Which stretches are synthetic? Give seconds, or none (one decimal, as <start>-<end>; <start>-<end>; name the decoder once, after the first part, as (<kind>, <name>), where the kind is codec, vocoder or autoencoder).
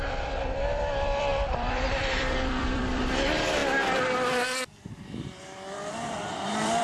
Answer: 0.0-3.6 (vocoder, BigVGAN v2); 5.4-6.8